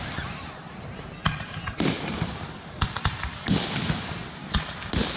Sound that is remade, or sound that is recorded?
recorded